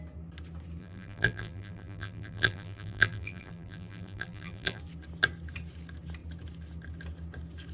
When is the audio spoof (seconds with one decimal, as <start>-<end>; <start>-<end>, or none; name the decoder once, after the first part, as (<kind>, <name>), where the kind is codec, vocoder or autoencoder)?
0.8-4.8 (vocoder, BigVGAN v2)